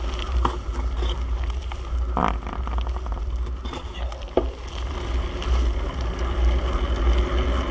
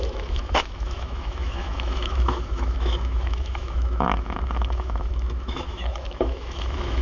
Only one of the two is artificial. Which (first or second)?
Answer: second